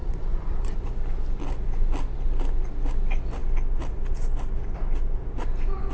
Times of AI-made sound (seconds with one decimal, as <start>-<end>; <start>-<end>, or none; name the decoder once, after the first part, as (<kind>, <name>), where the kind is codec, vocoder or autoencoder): 0.0-0.9 (vocoder, Vocos)